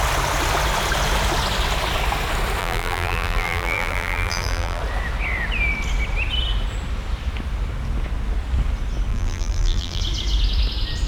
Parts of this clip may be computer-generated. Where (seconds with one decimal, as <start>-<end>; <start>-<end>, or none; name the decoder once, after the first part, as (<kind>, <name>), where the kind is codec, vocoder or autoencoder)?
2.6-4.8 (vocoder, BigVGAN v2); 9.1-10.0